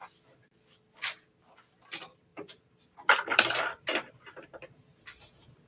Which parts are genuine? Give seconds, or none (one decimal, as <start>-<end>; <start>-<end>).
0.0-2.3; 2.8-3.3; 5.0-5.7